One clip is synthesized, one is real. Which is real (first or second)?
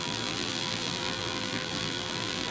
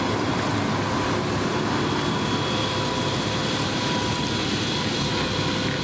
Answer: second